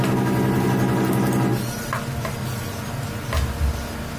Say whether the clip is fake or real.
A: real